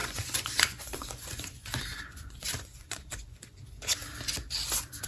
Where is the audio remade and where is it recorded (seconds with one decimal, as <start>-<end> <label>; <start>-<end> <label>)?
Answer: 0.0-3.6 remade; 3.6-5.1 recorded